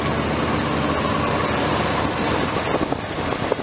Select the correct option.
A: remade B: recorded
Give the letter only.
B